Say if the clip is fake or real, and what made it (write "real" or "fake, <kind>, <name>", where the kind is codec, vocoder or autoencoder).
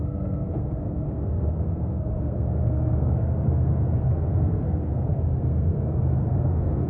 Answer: fake, codec, SNAC